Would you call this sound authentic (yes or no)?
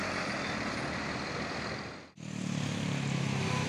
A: yes